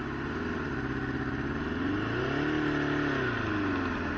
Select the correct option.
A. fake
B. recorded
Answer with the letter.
B